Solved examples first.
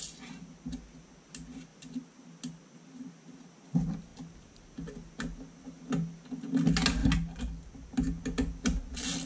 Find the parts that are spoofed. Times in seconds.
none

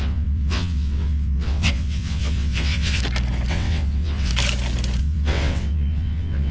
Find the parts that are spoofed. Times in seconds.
0.0-3.0 (vocoder, WaveNeXt); 3.5-4.3; 5.0-6.5

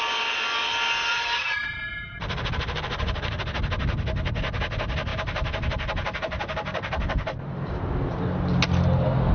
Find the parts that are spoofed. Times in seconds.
1.1-3.4 (vocoder, BigVGAN v2); 5.1-8.2

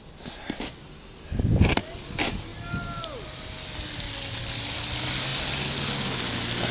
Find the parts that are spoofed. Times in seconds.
none

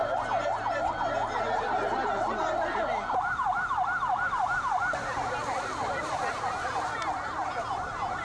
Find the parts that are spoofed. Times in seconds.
none

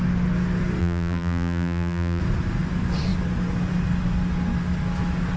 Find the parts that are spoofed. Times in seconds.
0.8-2.2 (vocoder, BigVGAN v2)

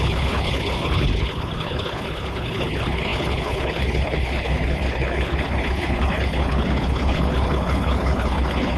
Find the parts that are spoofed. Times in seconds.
0.0-8.8 (codec, HILCodec)

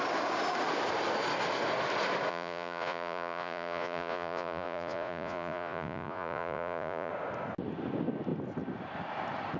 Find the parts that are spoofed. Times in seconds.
2.3-7.1 (vocoder, Vocos)